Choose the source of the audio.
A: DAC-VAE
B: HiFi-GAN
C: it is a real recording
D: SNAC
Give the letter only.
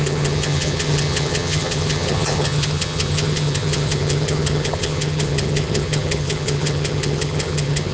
B